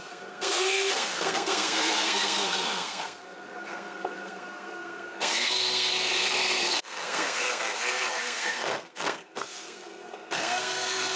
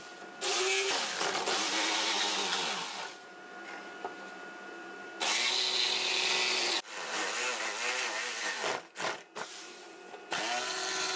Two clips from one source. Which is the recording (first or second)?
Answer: second